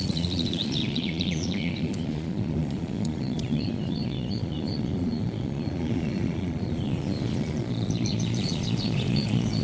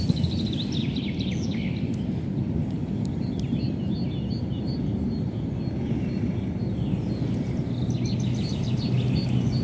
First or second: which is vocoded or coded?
first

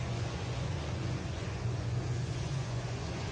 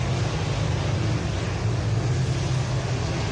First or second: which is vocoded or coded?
first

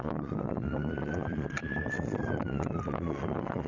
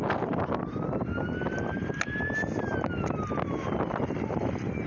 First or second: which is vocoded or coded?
first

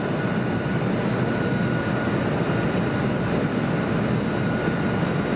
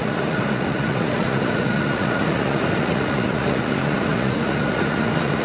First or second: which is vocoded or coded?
second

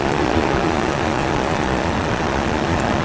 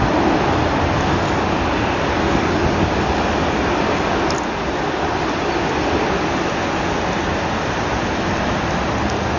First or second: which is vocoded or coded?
first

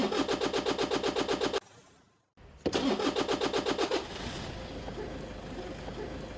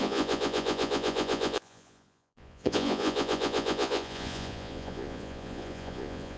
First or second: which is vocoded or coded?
second